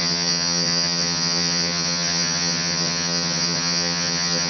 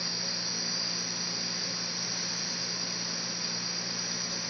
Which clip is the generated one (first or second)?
first